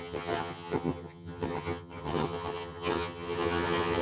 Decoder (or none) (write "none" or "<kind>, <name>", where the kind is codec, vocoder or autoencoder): vocoder, HiFi-GAN